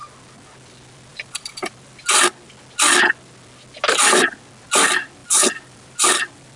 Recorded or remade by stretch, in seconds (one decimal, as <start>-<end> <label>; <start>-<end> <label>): 0.0-5.2 recorded; 5.2-6.6 remade